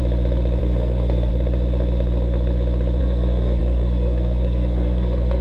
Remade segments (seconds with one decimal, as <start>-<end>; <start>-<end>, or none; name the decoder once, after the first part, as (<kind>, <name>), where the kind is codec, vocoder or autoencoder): 0.6-1.3 (codec, SNAC); 3.0-5.4